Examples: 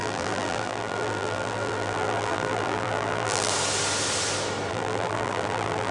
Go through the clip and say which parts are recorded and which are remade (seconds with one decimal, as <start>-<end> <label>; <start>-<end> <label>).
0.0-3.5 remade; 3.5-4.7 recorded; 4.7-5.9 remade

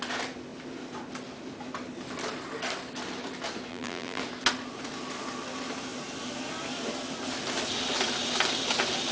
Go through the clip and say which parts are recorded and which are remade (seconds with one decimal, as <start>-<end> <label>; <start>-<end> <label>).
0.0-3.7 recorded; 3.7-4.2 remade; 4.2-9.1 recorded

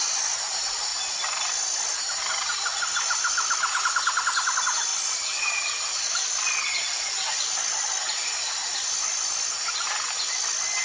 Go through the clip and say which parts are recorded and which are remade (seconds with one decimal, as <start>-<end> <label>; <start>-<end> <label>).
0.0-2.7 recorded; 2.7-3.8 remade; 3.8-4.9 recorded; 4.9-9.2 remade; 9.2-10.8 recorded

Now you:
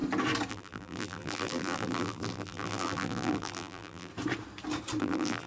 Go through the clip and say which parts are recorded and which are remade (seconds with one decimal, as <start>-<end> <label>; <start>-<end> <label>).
0.0-0.5 recorded; 0.5-4.1 remade; 4.1-5.0 recorded; 5.0-5.5 remade

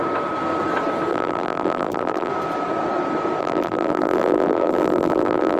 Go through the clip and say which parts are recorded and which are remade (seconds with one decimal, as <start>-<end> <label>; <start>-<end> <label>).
0.0-1.1 recorded; 1.1-2.3 remade; 2.3-3.4 recorded; 3.4-5.6 remade

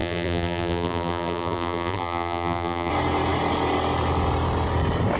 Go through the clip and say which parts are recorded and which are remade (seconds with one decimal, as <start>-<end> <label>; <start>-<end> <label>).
0.0-2.9 remade; 2.9-5.2 recorded